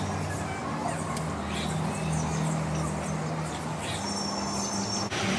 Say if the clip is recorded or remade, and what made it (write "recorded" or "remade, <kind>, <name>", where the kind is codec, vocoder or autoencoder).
recorded